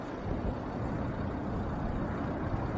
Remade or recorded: recorded